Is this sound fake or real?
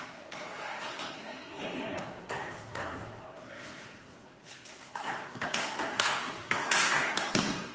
fake